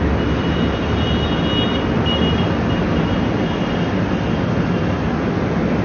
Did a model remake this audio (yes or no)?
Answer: no